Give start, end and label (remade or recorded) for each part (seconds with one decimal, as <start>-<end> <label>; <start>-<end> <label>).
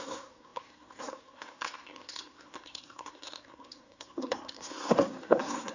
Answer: 0.0-5.7 remade